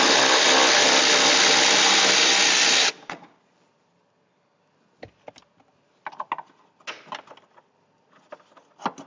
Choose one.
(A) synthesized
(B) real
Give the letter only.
B